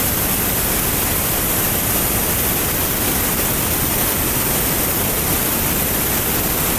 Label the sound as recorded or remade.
recorded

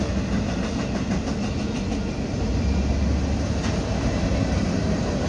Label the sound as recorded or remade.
recorded